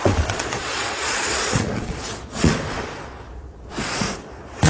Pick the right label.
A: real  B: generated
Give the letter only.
B